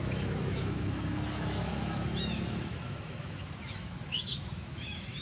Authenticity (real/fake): fake